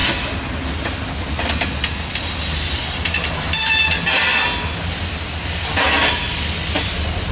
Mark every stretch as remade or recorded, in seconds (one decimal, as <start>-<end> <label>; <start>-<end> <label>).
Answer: 0.0-7.3 recorded